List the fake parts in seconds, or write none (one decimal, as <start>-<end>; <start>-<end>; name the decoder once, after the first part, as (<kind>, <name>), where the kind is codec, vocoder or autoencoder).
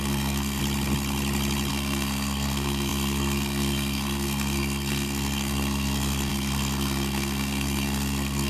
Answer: 0.0-0.6 (codec, SNAC); 1.7-8.5